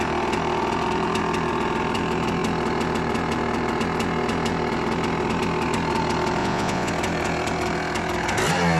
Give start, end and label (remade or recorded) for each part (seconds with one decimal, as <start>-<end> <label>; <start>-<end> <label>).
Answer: 0.0-6.4 recorded; 6.4-6.9 remade; 6.9-8.8 recorded